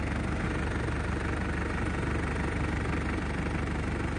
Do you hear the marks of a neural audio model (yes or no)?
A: no